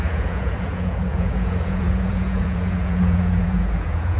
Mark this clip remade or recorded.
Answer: remade